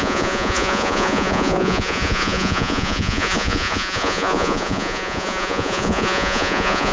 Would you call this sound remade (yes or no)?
yes